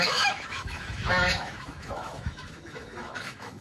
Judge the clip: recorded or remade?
remade